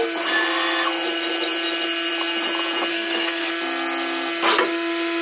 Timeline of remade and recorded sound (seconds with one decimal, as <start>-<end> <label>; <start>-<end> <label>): 0.0-2.9 recorded; 2.9-3.5 remade; 3.5-5.2 recorded